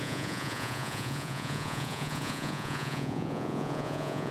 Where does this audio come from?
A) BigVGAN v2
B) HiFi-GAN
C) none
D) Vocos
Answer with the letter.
D